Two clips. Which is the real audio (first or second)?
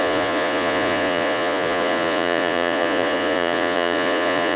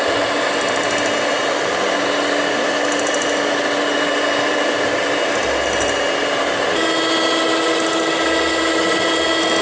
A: second